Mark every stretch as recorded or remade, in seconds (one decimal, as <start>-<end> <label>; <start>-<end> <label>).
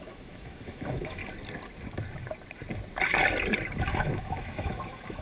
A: 0.0-1.2 remade; 1.2-3.9 recorded; 3.9-5.2 remade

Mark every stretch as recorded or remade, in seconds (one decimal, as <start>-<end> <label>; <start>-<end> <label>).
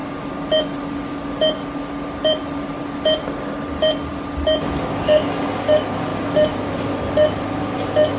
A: 0.0-8.2 recorded